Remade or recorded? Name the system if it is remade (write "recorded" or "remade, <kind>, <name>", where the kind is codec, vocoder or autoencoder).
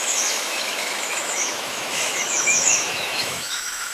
remade, autoencoder, DAC-VAE